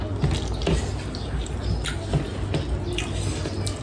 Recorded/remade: recorded